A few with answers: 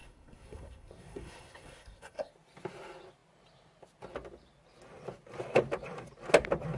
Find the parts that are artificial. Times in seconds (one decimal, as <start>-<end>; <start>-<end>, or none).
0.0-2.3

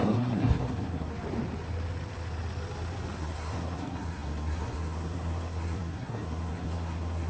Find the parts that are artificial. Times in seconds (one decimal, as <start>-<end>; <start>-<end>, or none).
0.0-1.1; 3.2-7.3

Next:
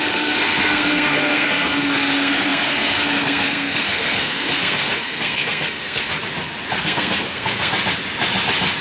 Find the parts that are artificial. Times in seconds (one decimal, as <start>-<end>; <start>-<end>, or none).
0.0-6.1; 6.8-7.7

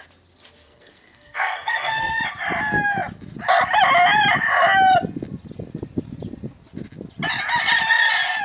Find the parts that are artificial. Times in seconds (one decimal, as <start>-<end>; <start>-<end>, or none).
0.6-2.2